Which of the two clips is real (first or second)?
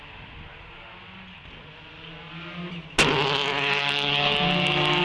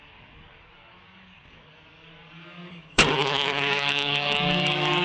first